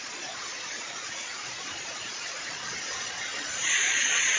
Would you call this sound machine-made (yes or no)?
yes